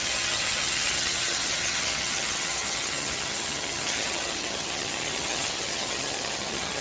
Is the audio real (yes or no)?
no